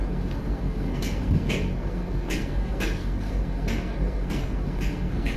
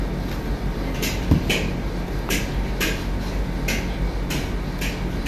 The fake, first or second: first